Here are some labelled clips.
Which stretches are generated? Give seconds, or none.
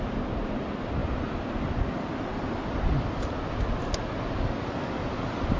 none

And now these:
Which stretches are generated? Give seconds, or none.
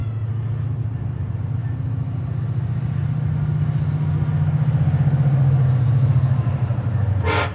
0.6-1.6 (vocoder, BigVGAN v2); 6.1-7.5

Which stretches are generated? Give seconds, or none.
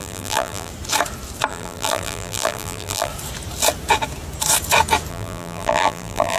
0.0-0.7 (vocoder, BigVGAN v2); 1.5-3.1; 5.1-6.4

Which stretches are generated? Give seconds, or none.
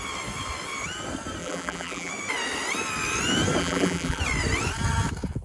1.4-2.1 (vocoder, BigVGAN v2); 3.6-4.2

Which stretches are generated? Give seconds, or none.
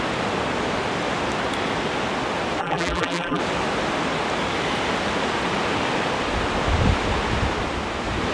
2.6-3.4 (vocoder, BigVGAN v2)